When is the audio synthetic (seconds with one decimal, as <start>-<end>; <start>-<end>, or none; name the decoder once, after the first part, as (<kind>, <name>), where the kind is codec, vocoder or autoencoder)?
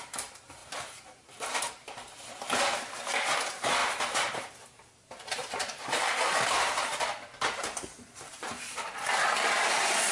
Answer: 0.0-10.1 (vocoder, BigVGAN v2)